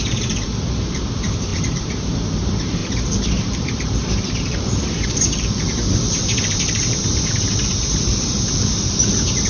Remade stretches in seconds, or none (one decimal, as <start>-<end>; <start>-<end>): 0.0-9.5